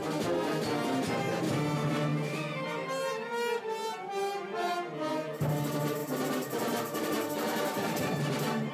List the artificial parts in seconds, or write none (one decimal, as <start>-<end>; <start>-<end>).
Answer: 6.0-8.7